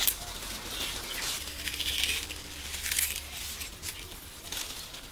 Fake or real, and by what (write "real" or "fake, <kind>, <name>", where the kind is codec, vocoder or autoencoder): real